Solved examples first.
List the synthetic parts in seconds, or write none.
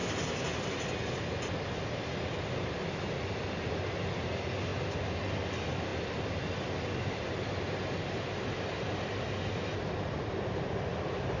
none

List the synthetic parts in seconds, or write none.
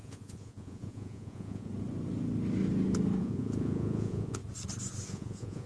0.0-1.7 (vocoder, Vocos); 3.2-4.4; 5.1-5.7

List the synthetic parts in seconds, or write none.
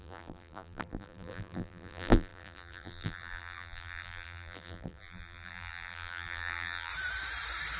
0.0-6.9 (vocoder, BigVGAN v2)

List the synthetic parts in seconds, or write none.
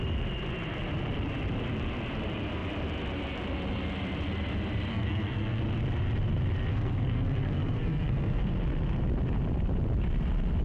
4.9-5.6 (codec, SNAC); 6.7-8.5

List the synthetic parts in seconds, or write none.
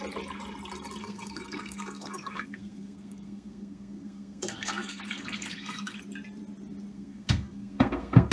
1.0-6.0 (codec, SNAC); 6.9-8.3